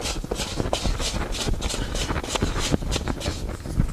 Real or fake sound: real